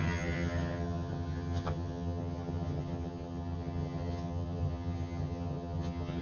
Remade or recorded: remade